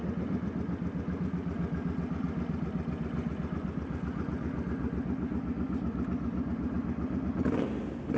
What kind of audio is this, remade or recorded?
recorded